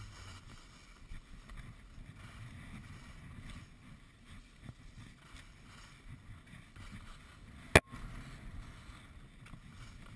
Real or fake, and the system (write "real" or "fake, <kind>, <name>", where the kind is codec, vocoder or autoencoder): real